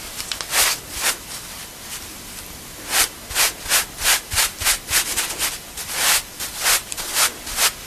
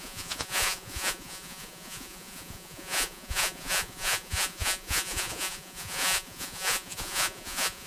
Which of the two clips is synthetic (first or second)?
second